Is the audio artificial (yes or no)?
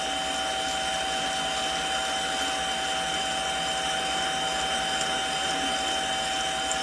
no